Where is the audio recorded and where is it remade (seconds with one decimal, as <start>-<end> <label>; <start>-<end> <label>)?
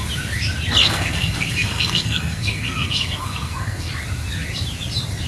0.0-0.8 recorded; 0.8-3.9 remade; 3.9-5.3 recorded